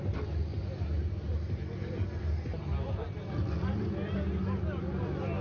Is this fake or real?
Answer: real